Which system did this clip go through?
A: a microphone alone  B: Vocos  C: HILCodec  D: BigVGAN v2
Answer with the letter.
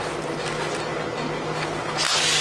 A